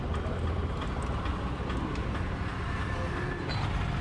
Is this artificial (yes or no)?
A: no